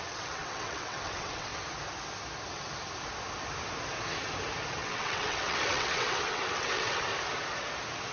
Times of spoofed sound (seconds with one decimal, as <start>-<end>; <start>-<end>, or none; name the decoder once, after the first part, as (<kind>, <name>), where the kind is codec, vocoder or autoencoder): 0.0-1.5 (vocoder, WaveNeXt); 4.7-7.1